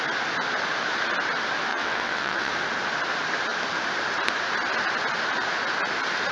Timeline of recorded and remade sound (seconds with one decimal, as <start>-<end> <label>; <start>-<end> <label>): 0.0-1.7 recorded; 1.7-2.5 remade; 2.5-6.3 recorded